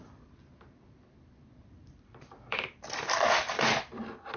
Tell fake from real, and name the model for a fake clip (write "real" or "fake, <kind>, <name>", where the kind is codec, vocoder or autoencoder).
fake, vocoder, BigVGAN v2